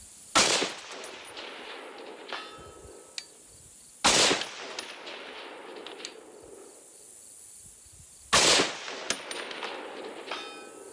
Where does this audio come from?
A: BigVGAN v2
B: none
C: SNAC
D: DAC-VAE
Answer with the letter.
B